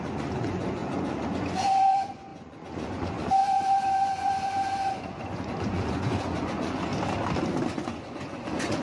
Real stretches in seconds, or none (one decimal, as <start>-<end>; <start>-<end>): 6.9-7.7